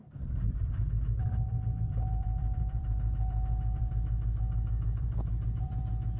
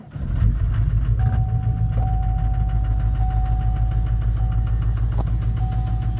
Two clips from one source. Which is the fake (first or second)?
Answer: first